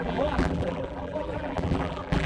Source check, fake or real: fake